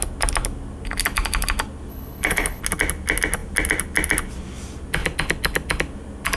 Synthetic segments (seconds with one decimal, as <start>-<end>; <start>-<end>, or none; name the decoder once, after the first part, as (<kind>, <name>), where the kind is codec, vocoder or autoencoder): 1.9-2.6 (codec, HILCodec)